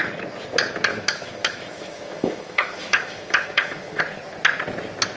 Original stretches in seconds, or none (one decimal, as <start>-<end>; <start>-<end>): 0.0-0.9; 4.0-5.2